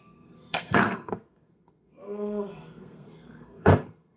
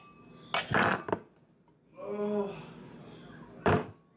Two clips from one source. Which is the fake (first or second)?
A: first